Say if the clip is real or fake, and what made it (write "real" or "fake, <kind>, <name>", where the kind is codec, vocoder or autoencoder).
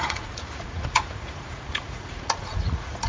fake, vocoder, Vocos